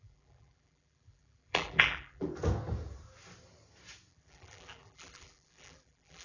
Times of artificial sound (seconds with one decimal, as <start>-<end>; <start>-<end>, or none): 0.0-2.3; 4.1-6.2